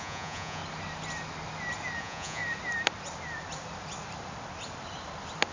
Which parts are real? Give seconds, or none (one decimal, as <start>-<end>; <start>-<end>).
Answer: 0.6-2.0; 2.4-5.5